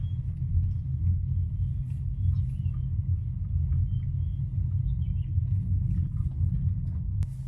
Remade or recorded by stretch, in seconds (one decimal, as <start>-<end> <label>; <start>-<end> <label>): 0.0-7.5 recorded